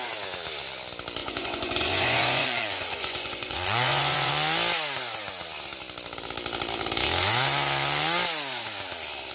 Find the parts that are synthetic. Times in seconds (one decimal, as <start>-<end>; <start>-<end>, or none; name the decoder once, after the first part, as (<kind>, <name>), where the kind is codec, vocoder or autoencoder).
1.2-4.3 (vocoder, Vocos)